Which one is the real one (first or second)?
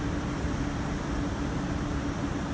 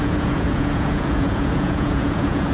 first